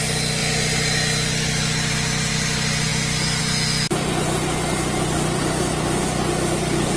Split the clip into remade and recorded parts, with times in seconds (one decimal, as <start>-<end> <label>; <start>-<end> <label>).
0.0-7.0 recorded